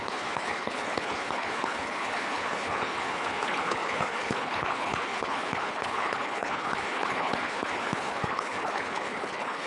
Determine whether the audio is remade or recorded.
remade